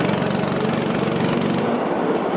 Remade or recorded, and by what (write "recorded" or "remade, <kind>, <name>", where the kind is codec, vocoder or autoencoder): recorded